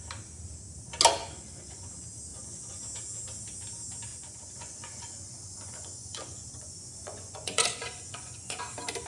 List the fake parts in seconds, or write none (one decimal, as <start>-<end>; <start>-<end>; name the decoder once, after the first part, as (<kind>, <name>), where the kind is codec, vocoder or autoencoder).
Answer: 1.2-1.9 (vocoder, Vocos); 2.3-2.8; 4.1-8.6